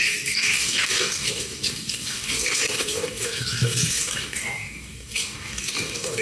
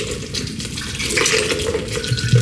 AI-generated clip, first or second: first